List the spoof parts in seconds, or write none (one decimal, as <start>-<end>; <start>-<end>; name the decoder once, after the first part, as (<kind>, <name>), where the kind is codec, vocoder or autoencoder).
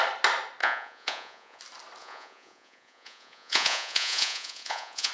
0.6-1.6 (vocoder, Vocos); 2.0-5.1